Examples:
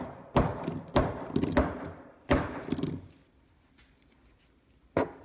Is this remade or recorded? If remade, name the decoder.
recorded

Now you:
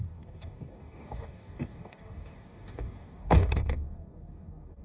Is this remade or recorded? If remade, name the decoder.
remade, codec, DAC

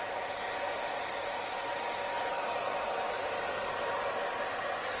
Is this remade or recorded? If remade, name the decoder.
recorded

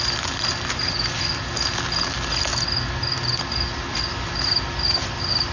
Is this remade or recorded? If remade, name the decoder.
recorded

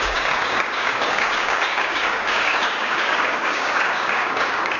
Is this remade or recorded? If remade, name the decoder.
remade, codec, DAC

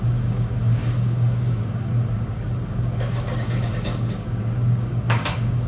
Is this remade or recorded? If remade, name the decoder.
remade, codec, DAC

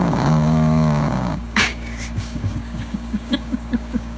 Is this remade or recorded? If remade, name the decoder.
remade, codec, DAC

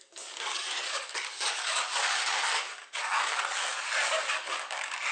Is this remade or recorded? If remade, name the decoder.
remade, codec, DAC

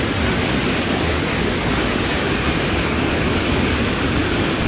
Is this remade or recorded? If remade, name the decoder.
remade, codec, DAC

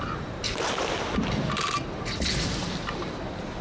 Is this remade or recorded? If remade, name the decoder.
recorded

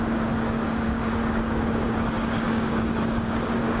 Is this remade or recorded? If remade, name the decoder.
remade, codec, DAC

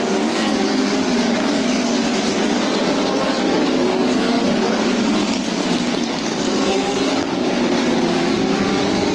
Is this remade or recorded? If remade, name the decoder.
remade, codec, DAC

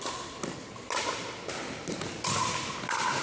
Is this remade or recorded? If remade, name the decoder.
recorded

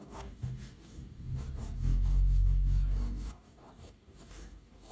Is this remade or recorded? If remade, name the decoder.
remade, codec, DAC